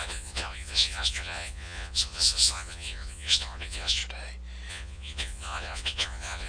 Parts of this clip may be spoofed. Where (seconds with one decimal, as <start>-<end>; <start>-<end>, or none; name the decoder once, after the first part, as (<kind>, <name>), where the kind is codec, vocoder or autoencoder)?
0.0-4.0 (vocoder, Vocos); 4.7-6.5

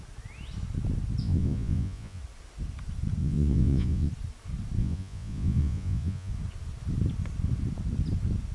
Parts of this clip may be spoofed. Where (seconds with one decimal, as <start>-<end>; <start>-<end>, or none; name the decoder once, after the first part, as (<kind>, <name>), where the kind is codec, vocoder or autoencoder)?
1.2-2.2 (vocoder, Vocos); 3.2-4.1; 4.8-6.3

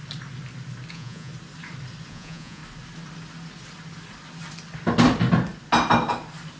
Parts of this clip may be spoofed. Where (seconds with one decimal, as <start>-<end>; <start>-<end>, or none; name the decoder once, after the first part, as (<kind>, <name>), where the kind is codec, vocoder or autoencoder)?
0.9-1.3 (vocoder, Vocos); 2.1-2.6

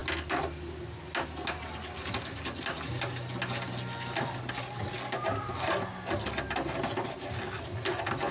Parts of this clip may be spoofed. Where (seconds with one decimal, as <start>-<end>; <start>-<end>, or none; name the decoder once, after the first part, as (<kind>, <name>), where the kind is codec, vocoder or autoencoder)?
none

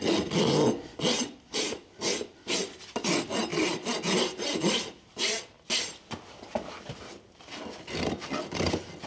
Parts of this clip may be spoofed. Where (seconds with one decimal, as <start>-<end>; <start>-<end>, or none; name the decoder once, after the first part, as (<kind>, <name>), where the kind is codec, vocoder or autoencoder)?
1.2-1.8 (vocoder, Vocos)

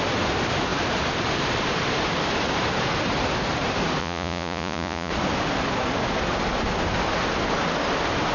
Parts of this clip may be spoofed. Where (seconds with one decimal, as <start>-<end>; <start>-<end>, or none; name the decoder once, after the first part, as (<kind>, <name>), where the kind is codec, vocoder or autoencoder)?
4.0-5.1 (vocoder, Vocos)

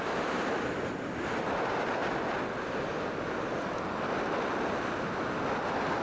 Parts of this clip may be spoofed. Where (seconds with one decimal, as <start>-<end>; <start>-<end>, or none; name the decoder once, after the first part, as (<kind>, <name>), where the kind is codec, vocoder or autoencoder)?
none

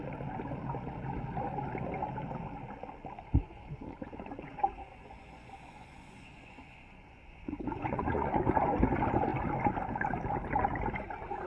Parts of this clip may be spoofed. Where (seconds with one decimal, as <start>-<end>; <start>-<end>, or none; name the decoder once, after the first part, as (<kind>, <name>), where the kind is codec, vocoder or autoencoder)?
3.3-8.4 (vocoder, Vocos)